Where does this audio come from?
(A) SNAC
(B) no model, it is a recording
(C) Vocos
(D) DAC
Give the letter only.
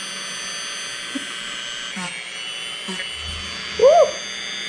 B